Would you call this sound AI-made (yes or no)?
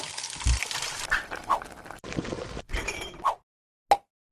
no